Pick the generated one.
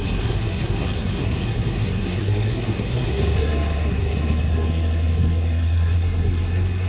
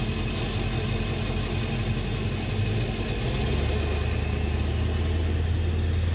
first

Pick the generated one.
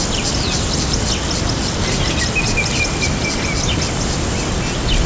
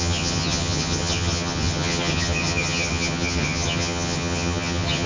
second